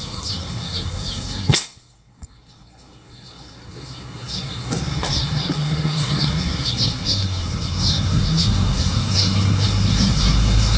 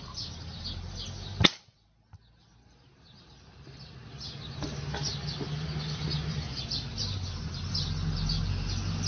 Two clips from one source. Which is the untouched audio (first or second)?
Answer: second